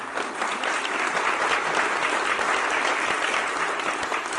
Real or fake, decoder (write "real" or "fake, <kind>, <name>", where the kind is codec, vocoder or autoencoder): real